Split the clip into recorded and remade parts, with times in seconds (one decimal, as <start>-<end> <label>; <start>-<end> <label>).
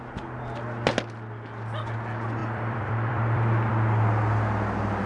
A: 0.0-2.4 recorded; 2.4-3.7 remade; 3.7-5.1 recorded